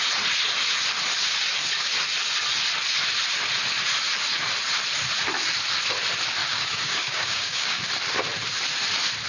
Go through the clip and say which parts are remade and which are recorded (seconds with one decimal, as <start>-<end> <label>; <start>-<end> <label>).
0.0-6.4 recorded; 6.4-7.8 remade; 7.8-9.3 recorded

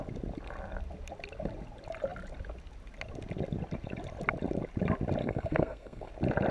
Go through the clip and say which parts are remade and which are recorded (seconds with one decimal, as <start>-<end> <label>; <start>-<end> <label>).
0.0-5.2 recorded; 5.2-6.1 remade; 6.1-6.5 recorded

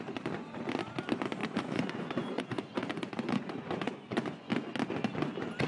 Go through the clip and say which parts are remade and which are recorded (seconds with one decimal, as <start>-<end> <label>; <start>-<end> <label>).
0.0-1.4 recorded; 1.4-4.5 remade; 4.5-5.7 recorded

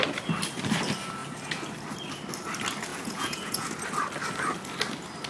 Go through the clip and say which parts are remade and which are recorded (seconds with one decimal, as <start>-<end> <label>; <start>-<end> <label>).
0.0-2.9 recorded; 2.9-3.7 remade; 3.7-5.3 recorded

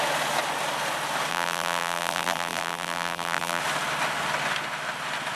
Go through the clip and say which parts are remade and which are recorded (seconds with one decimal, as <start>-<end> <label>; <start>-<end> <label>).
0.0-1.3 recorded; 1.3-3.6 remade; 3.6-5.4 recorded

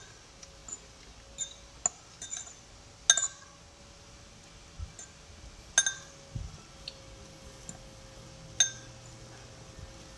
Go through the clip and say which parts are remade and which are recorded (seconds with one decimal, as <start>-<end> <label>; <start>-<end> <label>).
0.0-10.2 recorded

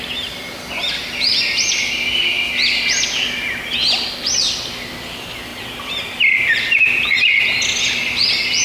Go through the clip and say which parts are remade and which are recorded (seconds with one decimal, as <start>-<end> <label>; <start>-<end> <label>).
0.0-8.6 recorded

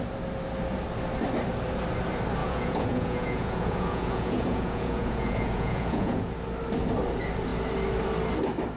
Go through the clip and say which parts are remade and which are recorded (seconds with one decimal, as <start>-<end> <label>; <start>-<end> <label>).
0.0-2.4 recorded; 2.4-6.3 remade; 6.3-8.8 recorded